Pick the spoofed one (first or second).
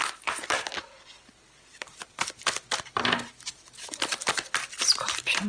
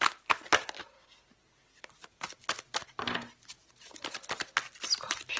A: first